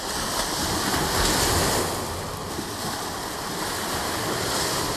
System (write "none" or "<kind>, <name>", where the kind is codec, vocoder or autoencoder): none